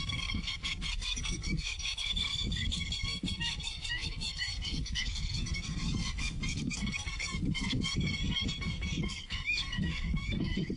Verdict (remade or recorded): remade